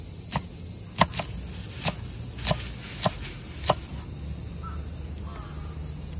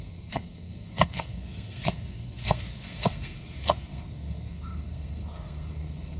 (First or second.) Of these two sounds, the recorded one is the first